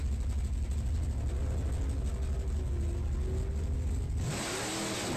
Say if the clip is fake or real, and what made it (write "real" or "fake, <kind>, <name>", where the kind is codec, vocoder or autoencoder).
real